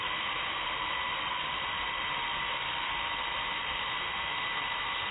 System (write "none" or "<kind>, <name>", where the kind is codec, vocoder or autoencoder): none